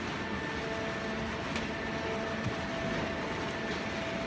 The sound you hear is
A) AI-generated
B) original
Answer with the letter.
B